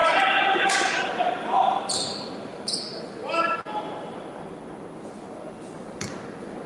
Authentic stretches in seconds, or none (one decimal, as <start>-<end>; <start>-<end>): 0.0-6.7